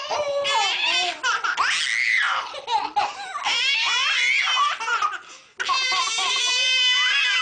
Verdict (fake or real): real